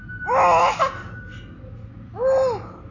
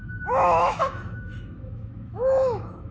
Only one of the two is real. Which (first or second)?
first